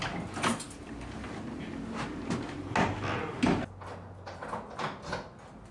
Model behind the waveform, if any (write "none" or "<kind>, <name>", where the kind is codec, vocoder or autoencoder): none